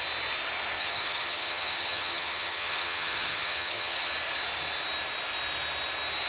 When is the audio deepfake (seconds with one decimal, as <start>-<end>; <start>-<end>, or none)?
0.8-4.1